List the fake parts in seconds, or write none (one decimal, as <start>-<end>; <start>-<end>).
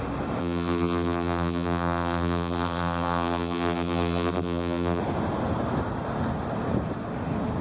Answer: 0.4-5.0